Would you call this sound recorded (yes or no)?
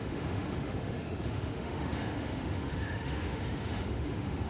no